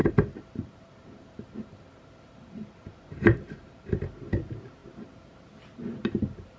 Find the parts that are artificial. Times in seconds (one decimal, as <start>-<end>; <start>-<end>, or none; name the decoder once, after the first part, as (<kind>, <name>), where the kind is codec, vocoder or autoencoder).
0.0-4.0 (vocoder, BigVGAN v2)